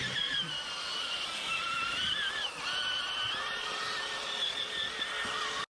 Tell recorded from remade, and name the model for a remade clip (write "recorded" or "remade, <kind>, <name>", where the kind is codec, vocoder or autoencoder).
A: recorded